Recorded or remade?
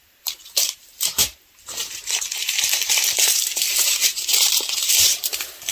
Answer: remade